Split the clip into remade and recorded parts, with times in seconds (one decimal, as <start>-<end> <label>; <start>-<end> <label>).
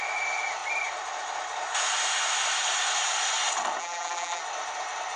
0.0-3.8 recorded; 3.8-4.4 remade; 4.4-5.2 recorded